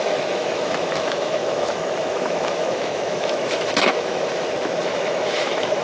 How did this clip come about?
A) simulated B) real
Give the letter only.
A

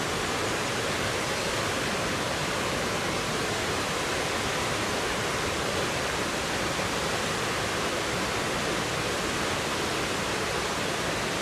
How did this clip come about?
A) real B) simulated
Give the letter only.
A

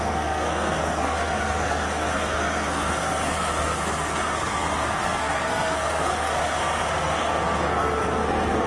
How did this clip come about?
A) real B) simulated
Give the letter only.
B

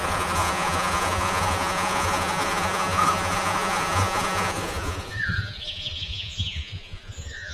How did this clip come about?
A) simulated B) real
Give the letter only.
A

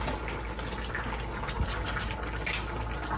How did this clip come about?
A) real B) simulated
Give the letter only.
A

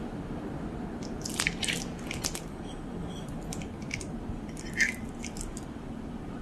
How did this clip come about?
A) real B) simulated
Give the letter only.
A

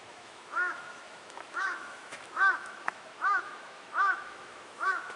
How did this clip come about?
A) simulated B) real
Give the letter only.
A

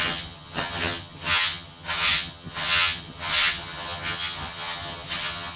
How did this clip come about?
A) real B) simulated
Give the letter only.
B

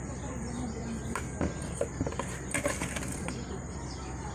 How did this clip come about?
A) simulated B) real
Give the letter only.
B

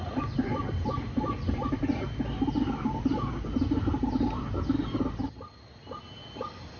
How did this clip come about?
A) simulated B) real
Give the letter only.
B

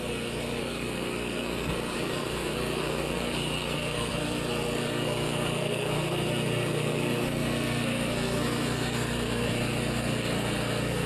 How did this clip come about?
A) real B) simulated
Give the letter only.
B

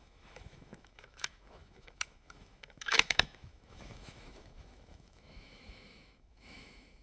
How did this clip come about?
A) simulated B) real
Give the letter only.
A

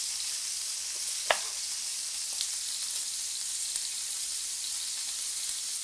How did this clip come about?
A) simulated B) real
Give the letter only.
B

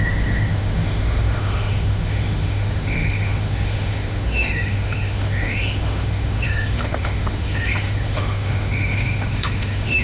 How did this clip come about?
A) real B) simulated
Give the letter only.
B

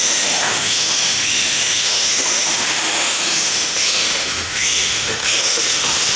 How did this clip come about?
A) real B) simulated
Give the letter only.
B